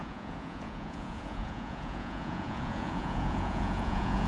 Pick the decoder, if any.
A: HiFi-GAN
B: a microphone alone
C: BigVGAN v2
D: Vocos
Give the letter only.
D